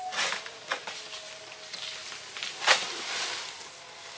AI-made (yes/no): no